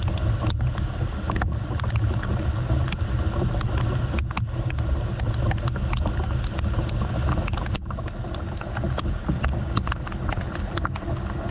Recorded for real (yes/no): yes